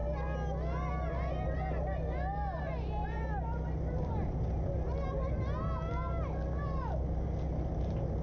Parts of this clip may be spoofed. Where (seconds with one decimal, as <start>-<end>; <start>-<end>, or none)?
none